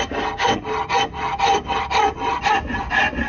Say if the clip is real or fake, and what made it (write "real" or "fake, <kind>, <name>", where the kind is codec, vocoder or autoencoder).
real